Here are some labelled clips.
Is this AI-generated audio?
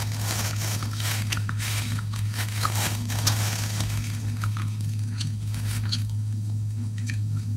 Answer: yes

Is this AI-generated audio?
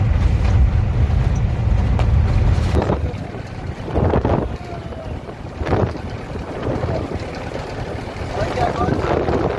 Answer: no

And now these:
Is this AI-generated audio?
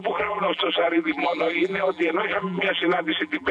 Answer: yes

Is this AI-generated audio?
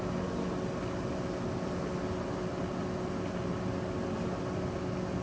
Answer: no